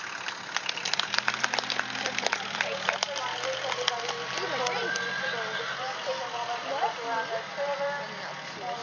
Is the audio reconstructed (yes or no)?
no